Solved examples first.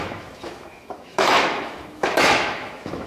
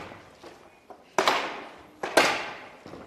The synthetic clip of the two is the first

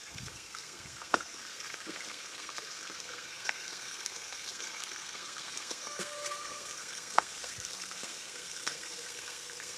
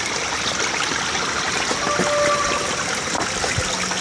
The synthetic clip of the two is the first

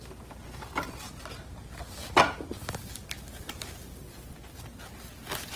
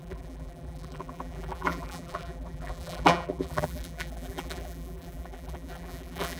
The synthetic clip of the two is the second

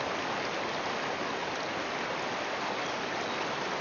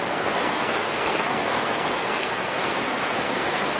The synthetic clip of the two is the second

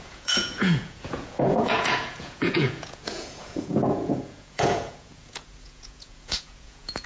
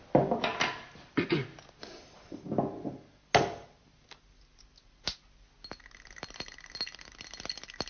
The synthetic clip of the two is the first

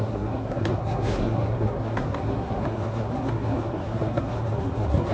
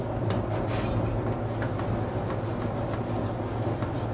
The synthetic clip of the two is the first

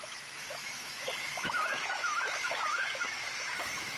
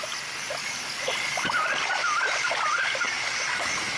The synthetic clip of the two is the first